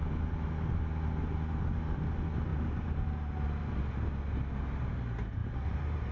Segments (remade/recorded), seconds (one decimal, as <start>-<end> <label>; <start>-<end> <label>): 0.0-2.5 recorded; 2.5-3.8 remade; 3.8-5.4 recorded; 5.4-6.1 remade